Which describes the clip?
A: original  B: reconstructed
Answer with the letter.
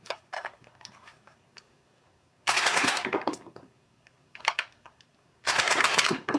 B